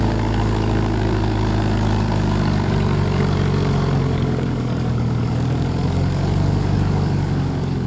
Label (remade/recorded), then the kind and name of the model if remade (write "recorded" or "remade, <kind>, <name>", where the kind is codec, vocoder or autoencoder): remade, codec, DAC